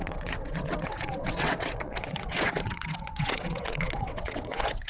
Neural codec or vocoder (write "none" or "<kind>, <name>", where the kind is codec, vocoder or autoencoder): vocoder, WaveNeXt